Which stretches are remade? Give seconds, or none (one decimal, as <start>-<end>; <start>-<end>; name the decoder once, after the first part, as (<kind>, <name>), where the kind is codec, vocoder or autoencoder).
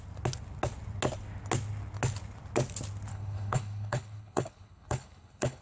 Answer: 3.1-5.6 (codec, HILCodec)